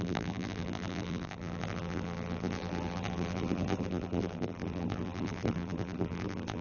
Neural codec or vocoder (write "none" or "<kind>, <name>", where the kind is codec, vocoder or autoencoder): vocoder, BigVGAN v2